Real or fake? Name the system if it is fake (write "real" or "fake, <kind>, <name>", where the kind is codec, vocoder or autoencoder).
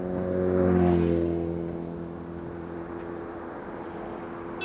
real